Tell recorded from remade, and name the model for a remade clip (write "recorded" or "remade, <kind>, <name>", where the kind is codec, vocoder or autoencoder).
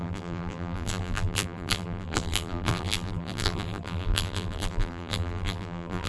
remade, vocoder, BigVGAN v2